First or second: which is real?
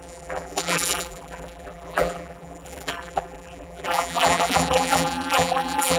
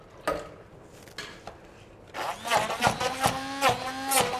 second